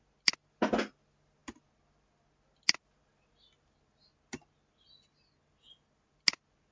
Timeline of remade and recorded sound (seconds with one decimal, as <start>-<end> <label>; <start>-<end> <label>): 0.0-6.7 recorded